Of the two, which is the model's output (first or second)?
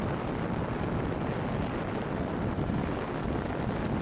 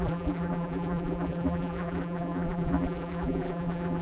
second